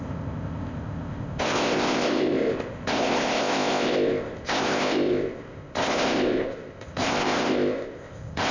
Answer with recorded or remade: remade